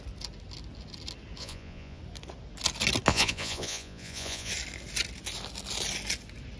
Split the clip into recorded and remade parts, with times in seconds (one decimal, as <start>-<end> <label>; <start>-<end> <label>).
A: 0.0-1.4 recorded; 1.4-2.0 remade; 2.0-3.1 recorded; 3.1-4.5 remade; 4.5-6.6 recorded